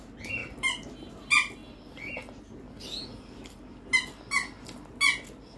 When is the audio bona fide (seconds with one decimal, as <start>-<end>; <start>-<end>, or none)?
0.0-5.6